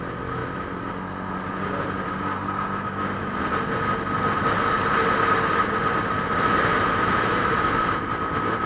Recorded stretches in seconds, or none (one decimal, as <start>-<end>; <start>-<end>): 0.0-8.7